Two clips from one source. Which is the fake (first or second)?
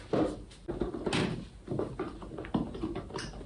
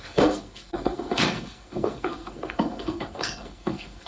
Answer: second